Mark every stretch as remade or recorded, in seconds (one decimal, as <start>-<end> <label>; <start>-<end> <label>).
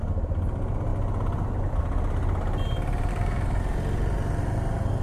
0.0-3.1 recorded; 3.1-3.8 remade; 3.8-5.0 recorded